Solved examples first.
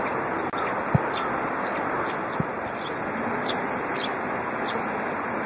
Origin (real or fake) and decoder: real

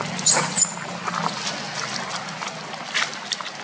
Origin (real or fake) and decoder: real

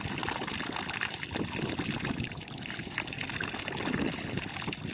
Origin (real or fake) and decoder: real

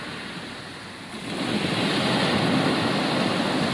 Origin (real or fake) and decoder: real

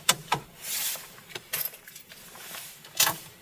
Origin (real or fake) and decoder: fake, vocoder, BigVGAN v2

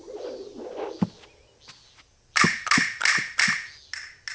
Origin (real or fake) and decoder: real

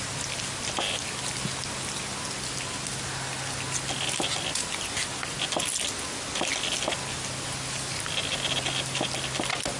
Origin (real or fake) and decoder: real